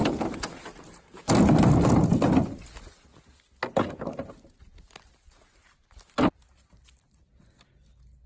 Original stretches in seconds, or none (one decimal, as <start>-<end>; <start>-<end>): 0.0-8.3